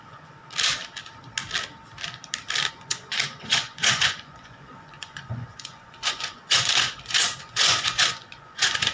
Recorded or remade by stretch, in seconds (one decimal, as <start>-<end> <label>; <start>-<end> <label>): 0.0-0.4 remade; 0.4-2.7 recorded; 2.7-8.9 remade